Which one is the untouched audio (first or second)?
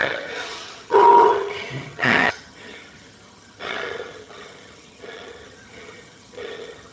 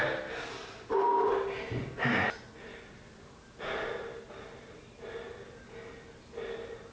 second